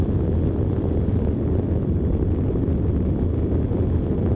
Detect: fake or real real